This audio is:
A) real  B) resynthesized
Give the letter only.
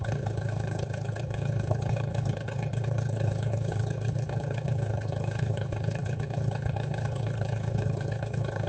B